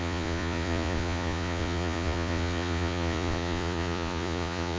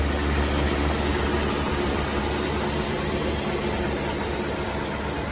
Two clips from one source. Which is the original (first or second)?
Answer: second